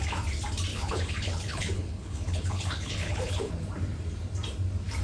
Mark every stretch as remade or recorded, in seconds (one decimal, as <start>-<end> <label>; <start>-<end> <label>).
0.0-0.7 recorded; 0.7-3.5 remade; 3.5-5.0 recorded

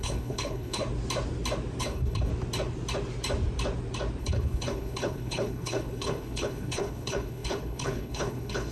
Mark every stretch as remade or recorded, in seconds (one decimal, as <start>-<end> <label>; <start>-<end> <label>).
0.0-0.8 remade; 0.8-1.8 recorded; 1.8-2.3 remade; 2.3-4.2 recorded; 4.2-8.7 remade

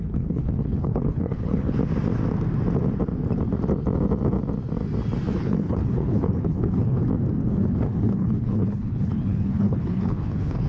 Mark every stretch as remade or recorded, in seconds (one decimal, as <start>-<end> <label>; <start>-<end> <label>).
0.0-1.8 remade; 1.8-5.4 recorded; 5.4-7.0 remade; 7.0-7.5 recorded; 7.5-10.7 remade

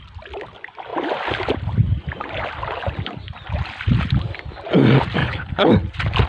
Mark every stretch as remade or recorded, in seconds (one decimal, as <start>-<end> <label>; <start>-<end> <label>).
0.0-5.2 recorded; 5.2-5.7 remade; 5.7-6.3 recorded